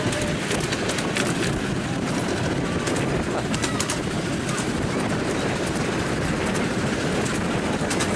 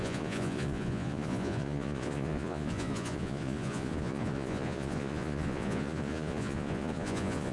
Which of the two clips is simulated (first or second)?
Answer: second